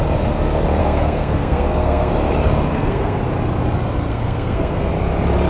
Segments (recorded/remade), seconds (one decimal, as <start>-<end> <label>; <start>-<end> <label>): 0.0-0.8 recorded; 0.8-2.1 remade; 2.1-2.7 recorded; 2.7-3.2 remade; 3.2-4.1 recorded; 4.1-4.9 remade; 4.9-5.5 recorded